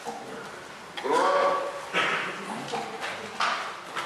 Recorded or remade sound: recorded